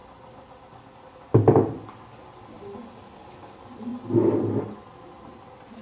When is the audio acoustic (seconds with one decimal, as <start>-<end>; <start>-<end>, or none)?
0.0-5.8